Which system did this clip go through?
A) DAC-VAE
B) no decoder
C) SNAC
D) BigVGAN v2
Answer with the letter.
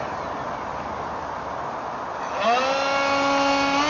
B